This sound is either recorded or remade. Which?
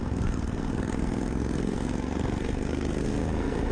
remade